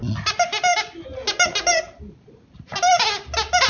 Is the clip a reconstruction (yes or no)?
no